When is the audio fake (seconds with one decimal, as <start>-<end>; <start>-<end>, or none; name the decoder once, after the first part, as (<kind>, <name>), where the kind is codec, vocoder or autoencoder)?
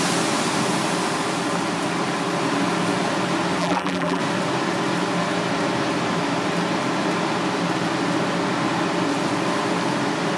3.6-4.2 (vocoder, BigVGAN v2)